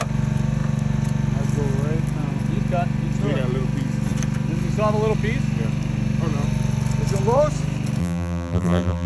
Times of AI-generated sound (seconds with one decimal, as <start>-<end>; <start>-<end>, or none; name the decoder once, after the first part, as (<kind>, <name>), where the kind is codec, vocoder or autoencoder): 8.0-9.1 (vocoder, BigVGAN v2)